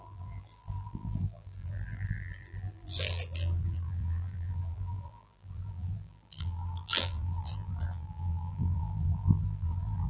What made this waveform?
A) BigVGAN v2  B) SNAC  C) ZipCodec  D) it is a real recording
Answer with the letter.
A